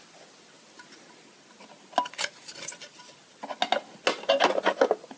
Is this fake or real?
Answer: real